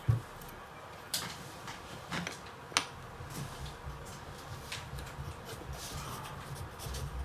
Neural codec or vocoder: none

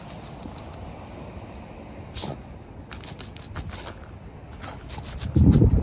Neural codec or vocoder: none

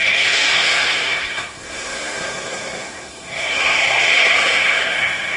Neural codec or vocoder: codec, SNAC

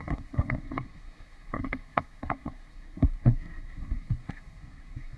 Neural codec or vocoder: codec, SNAC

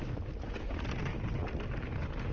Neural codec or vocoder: none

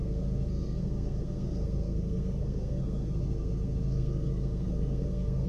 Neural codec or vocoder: codec, SNAC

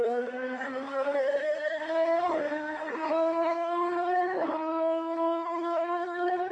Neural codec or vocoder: codec, SNAC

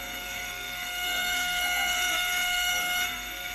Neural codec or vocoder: codec, SNAC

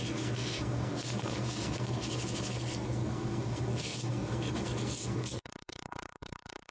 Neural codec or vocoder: codec, SNAC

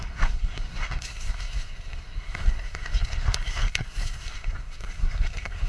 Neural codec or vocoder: codec, SNAC